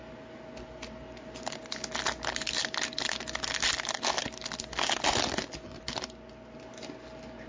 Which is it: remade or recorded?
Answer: recorded